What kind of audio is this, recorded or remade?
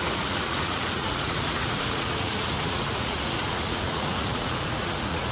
remade